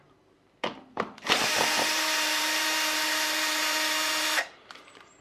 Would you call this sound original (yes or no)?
no